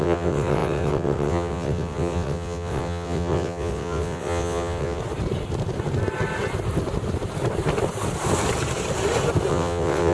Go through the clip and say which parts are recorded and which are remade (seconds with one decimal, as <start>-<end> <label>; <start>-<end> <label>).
0.0-5.0 remade; 5.0-9.5 recorded; 9.5-10.1 remade